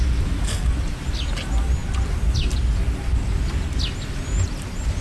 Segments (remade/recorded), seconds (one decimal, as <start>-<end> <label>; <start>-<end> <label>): 0.0-5.0 recorded